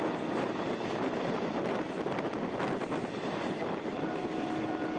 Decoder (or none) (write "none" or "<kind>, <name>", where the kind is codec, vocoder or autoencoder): none